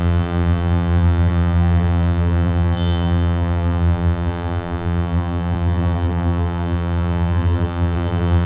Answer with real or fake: fake